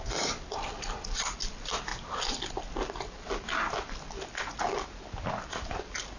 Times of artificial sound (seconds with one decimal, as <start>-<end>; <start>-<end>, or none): none